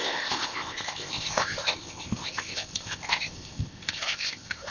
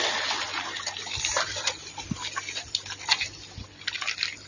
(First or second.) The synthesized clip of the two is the first